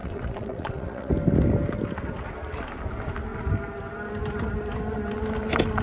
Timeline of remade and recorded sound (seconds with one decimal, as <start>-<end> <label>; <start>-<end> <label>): 0.0-1.1 remade; 1.1-5.8 recorded